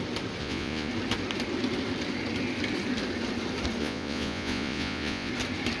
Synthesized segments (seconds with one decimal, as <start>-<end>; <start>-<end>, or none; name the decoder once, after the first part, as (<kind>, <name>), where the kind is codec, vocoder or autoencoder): 0.4-0.9 (vocoder, Vocos); 3.8-5.3